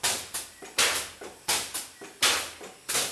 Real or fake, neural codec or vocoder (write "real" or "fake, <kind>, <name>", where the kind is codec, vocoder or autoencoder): real